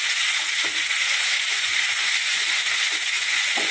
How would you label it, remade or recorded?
remade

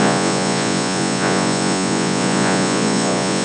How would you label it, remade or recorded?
remade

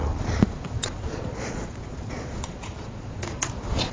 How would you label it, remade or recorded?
remade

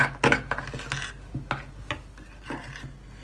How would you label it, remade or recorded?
recorded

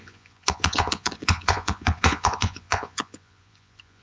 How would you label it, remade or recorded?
remade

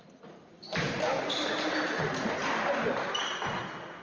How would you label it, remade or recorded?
recorded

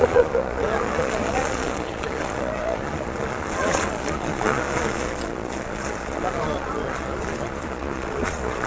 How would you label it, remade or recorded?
remade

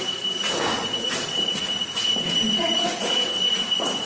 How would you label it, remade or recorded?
remade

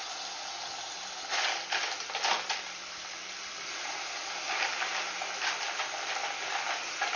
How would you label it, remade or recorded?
recorded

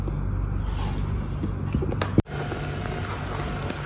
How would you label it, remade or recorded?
recorded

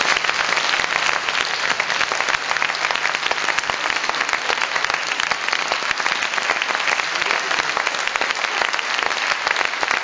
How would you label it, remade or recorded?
recorded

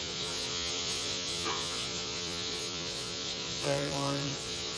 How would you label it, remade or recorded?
remade